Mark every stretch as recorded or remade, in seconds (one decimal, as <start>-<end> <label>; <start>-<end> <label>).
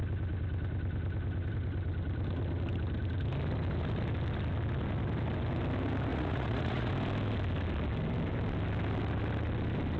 0.0-6.1 recorded; 6.1-6.9 remade; 6.9-10.0 recorded